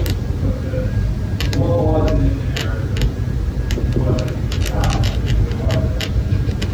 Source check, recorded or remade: recorded